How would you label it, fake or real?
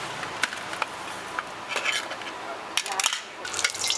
real